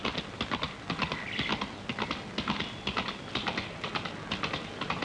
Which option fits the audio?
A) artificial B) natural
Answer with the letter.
B